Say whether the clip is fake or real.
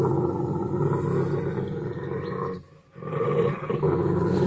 real